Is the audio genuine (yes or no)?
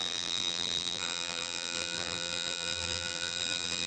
no